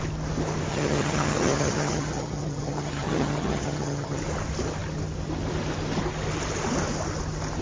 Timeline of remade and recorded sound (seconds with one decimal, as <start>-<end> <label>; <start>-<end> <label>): 0.0-0.7 recorded; 0.7-4.2 remade; 4.2-7.6 recorded

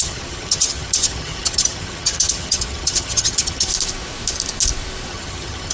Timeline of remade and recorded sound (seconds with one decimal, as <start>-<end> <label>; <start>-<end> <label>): 0.0-3.7 remade; 3.7-5.1 recorded; 5.1-5.7 remade

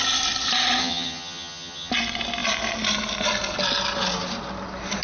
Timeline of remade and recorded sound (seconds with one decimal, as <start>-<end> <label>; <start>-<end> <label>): 0.0-0.8 recorded; 0.8-1.9 remade; 1.9-5.0 recorded